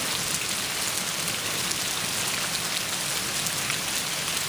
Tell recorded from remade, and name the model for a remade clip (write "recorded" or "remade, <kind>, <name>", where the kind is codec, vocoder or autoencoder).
recorded